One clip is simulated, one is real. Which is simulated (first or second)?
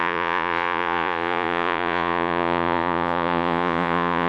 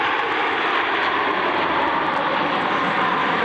first